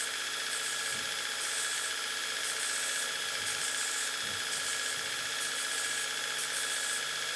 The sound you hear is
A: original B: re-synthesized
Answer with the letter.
A